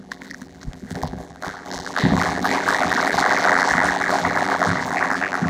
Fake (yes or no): yes